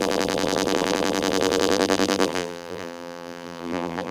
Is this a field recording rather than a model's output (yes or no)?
no